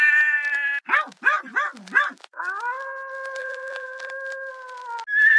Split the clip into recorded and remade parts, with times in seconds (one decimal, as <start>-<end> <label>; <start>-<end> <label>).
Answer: 0.0-3.4 recorded; 3.4-4.1 remade; 4.1-5.4 recorded